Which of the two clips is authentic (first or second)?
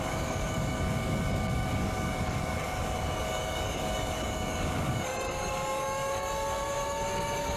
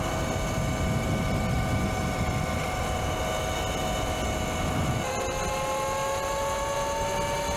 second